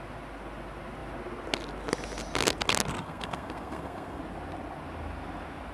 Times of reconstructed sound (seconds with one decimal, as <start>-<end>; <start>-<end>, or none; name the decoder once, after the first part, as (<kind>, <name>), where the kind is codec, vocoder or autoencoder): 2.9-4.2 (codec, SNAC)